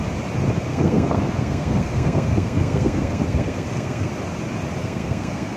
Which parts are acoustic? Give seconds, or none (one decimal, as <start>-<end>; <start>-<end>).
0.0-0.7; 4.1-4.8